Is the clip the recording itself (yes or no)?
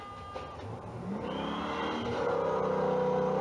yes